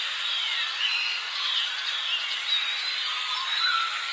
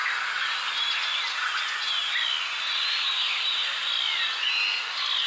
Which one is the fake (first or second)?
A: first